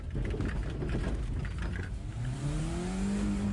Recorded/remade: recorded